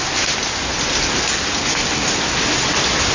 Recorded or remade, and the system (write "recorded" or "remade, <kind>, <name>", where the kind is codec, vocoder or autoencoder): recorded